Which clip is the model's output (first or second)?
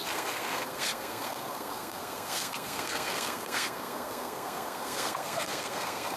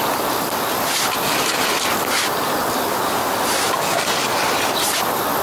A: first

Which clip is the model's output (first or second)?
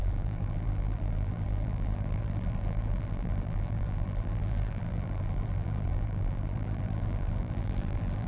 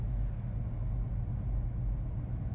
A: first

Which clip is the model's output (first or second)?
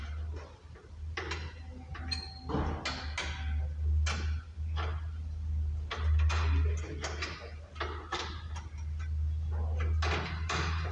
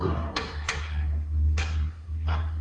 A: second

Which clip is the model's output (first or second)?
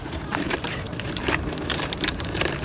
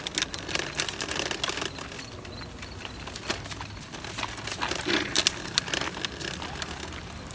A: first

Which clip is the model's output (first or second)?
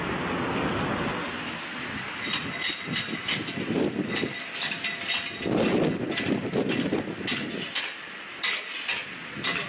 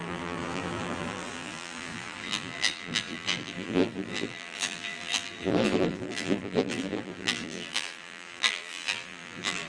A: second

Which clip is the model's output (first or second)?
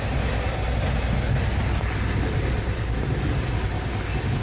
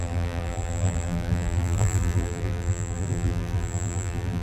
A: second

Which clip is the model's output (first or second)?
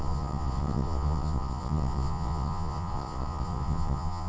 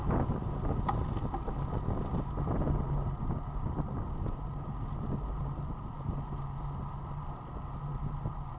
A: first